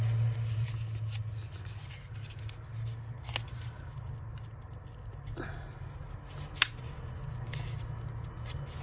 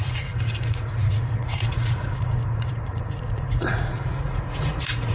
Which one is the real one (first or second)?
first